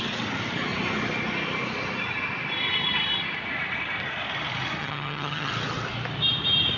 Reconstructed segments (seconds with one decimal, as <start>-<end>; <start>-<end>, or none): 4.8-5.5